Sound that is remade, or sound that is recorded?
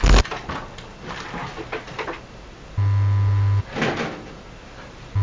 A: recorded